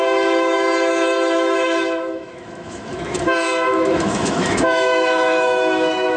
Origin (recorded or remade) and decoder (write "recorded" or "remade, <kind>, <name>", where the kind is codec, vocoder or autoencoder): remade, autoencoder, DAC-VAE